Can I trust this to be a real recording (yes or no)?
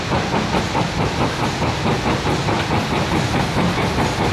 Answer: yes